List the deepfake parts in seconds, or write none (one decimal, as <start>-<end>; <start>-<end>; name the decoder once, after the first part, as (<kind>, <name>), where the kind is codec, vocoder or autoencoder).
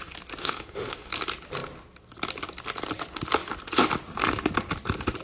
0.4-1.1 (autoencoder, DAC-VAE)